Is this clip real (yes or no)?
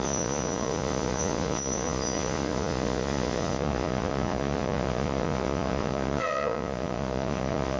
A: no